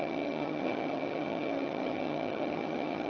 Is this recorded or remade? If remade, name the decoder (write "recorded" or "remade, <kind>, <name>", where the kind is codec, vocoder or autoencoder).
remade, vocoder, HiFi-GAN